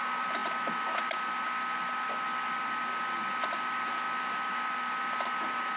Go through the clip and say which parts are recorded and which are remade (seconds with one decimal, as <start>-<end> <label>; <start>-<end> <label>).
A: 0.0-5.8 recorded